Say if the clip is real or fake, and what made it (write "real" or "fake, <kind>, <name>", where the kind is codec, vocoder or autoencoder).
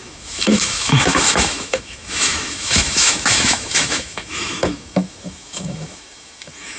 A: fake, autoencoder, DAC-VAE